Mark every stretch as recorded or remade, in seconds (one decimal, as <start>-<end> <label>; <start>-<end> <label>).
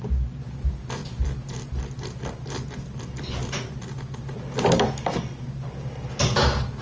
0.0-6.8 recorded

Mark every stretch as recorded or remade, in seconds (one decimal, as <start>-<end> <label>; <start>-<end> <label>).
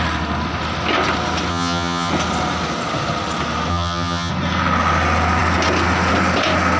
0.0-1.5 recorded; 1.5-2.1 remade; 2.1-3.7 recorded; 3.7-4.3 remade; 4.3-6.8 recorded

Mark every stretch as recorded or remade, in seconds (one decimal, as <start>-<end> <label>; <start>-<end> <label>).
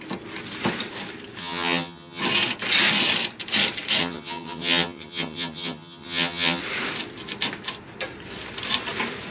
0.0-1.4 recorded; 1.4-2.2 remade; 2.2-4.0 recorded; 4.0-6.6 remade; 6.6-9.3 recorded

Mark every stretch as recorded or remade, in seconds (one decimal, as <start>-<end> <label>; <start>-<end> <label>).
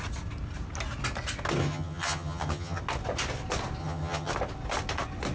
0.0-1.6 recorded; 1.6-2.8 remade; 2.8-3.8 recorded; 3.8-4.3 remade; 4.3-5.3 recorded